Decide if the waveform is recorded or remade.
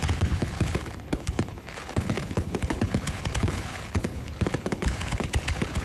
remade